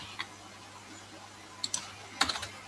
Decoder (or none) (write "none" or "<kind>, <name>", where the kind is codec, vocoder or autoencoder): none